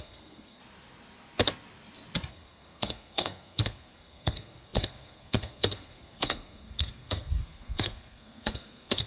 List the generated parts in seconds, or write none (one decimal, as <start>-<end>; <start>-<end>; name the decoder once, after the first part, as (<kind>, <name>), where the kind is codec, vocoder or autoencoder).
0.0-0.6 (codec, SNAC); 2.3-9.1